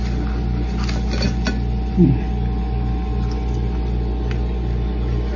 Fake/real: real